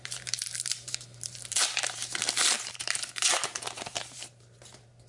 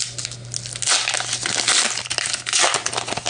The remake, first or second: first